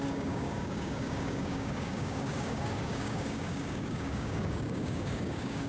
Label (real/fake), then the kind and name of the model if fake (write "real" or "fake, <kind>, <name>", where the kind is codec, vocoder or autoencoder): fake, codec, DAC